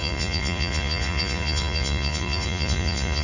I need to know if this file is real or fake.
fake